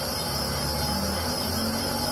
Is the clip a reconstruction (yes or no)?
no